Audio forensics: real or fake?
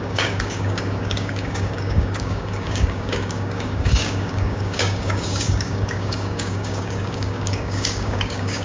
fake